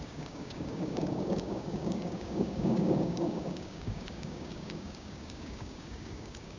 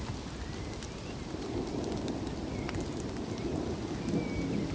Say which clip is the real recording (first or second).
second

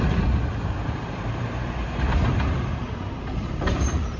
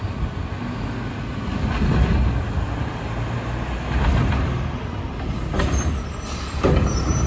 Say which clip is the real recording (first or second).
second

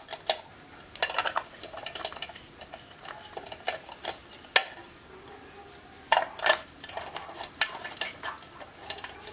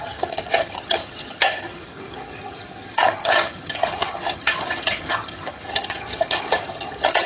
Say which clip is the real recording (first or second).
first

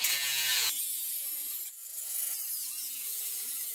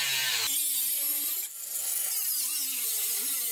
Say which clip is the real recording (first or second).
second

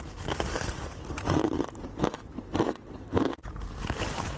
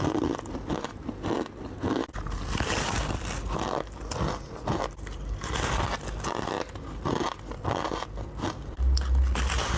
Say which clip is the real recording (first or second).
second